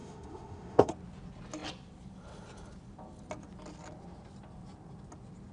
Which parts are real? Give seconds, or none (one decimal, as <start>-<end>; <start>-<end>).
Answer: 0.9-5.5